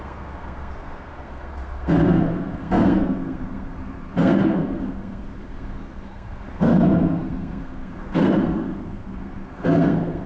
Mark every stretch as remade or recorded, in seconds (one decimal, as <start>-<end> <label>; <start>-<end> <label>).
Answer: 0.0-10.3 remade